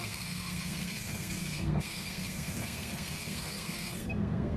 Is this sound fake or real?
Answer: fake